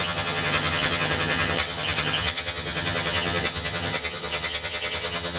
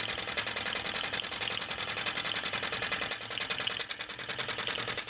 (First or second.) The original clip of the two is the second